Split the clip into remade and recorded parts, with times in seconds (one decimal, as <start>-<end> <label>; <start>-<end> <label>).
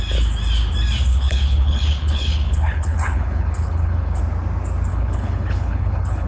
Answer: 0.0-1.1 recorded; 1.1-4.2 remade; 4.2-4.9 recorded; 4.9-6.3 remade